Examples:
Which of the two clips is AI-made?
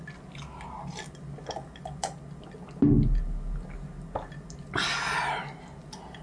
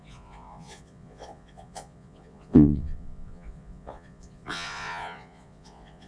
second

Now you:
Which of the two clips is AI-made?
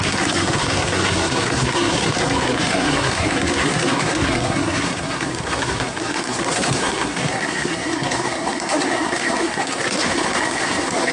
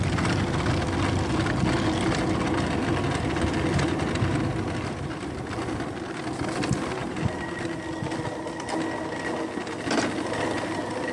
first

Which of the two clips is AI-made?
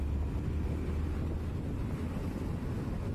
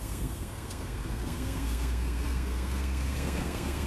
second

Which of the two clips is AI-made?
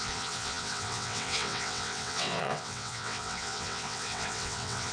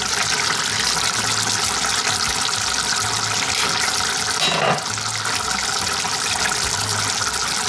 first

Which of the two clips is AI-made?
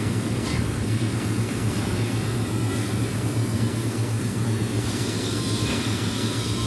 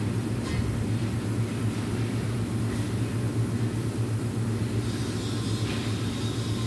first